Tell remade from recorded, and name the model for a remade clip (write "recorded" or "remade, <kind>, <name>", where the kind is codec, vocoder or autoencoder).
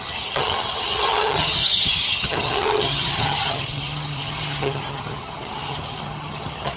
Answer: remade, vocoder, HiFi-GAN